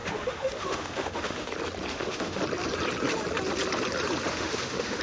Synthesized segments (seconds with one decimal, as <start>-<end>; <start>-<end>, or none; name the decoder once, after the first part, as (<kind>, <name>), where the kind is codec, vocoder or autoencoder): 0.0-1.5 (autoencoder, DAC-VAE); 1.9-2.4; 4.3-5.0